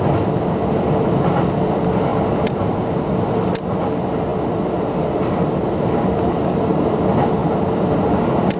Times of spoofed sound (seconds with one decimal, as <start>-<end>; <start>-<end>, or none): none